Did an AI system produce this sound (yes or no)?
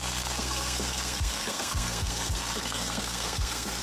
yes